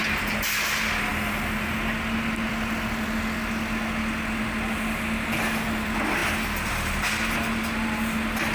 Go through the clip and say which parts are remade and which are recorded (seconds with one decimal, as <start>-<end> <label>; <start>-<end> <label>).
0.0-8.5 recorded